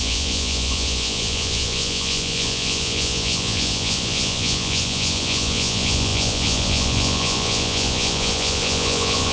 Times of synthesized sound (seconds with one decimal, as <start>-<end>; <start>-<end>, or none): 0.0-9.3